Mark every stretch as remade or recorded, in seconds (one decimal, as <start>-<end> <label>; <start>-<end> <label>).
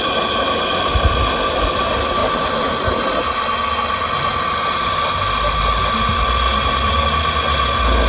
0.0-8.1 recorded